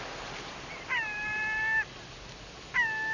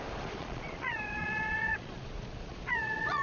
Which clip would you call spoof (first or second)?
second